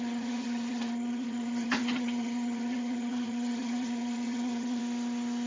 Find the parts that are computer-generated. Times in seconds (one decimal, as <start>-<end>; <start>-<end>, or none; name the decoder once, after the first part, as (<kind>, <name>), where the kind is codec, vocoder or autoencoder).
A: 0.0-4.8 (vocoder, HiFi-GAN)